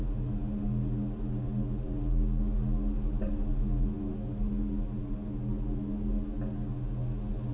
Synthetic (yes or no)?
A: no